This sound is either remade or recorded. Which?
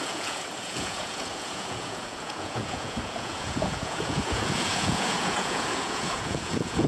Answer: remade